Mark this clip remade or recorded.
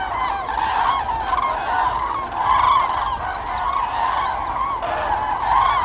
recorded